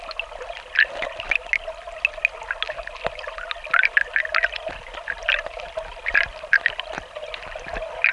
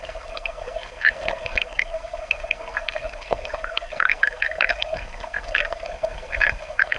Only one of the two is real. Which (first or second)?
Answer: first